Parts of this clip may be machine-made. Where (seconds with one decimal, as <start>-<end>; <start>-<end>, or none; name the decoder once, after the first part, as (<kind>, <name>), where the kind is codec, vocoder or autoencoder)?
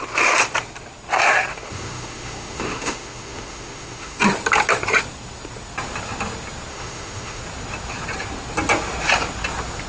1.5-4.2 (autoencoder, DAC-VAE); 6.7-7.4